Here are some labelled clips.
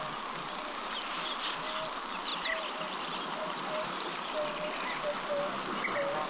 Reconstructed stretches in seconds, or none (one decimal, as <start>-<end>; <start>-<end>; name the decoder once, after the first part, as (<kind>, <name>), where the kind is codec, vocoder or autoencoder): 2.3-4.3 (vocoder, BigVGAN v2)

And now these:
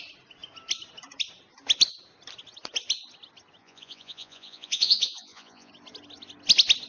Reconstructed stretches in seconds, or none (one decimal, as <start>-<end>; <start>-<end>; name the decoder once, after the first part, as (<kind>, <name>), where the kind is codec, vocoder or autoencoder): 3.6-5.7 (vocoder, Vocos)

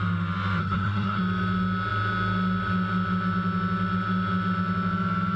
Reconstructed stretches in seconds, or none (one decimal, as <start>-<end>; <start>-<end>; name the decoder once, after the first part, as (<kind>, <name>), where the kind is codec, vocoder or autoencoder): 0.6-1.2 (codec, SNAC)